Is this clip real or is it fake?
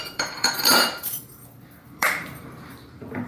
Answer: fake